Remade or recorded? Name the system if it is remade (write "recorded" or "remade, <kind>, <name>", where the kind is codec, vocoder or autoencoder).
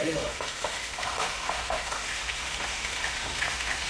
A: remade, autoencoder, DAC-VAE